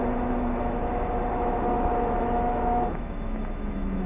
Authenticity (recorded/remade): remade